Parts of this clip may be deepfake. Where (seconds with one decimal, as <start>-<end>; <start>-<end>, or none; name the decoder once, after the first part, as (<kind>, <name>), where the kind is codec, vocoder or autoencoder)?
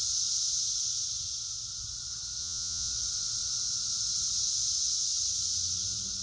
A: 2.4-2.9 (vocoder, Vocos)